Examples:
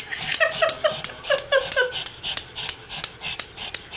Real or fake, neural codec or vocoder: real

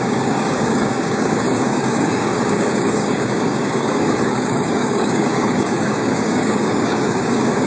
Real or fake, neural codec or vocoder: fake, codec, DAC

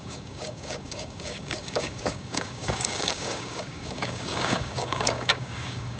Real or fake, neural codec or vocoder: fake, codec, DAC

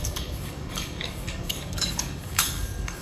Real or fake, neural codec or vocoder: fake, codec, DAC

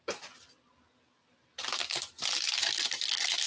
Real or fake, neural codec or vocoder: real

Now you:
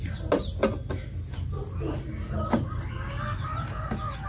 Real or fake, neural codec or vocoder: real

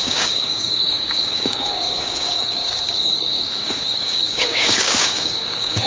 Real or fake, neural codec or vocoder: fake, codec, DAC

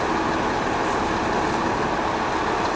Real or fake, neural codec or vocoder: real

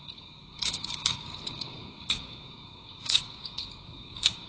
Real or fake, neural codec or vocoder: fake, codec, DAC